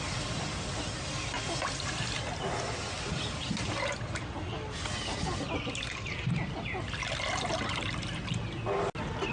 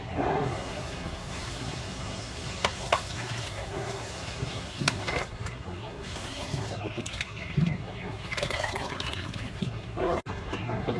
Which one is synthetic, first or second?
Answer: second